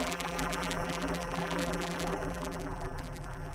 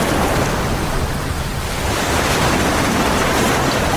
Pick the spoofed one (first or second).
first